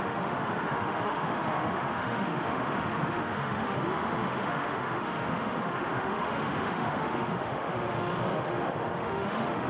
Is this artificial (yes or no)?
yes